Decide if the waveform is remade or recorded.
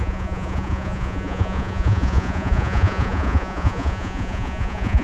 remade